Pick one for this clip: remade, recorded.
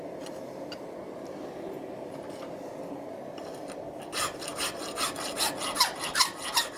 remade